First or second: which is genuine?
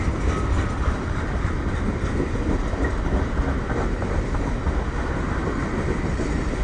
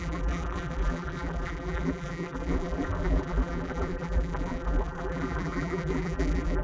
first